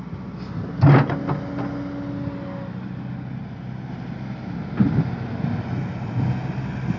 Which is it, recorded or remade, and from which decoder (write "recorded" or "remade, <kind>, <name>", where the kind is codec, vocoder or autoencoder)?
recorded